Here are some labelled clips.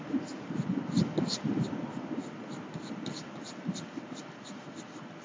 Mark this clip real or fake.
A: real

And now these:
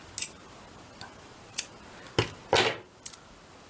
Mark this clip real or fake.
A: real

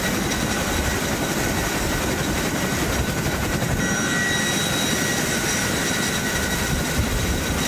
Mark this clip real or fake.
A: real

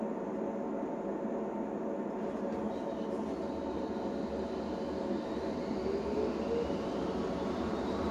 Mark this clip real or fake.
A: real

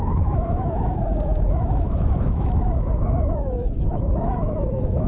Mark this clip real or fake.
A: fake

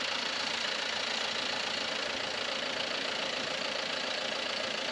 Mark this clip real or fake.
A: fake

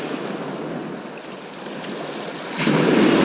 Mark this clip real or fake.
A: real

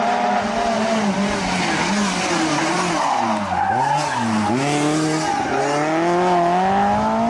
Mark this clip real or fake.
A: real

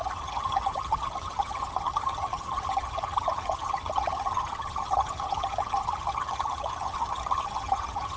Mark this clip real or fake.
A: fake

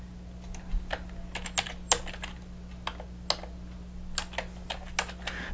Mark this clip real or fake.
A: real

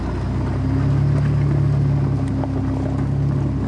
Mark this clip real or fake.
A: real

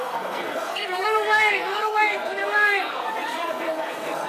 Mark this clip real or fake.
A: fake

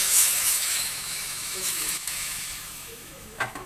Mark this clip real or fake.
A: fake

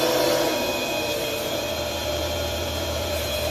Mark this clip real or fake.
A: fake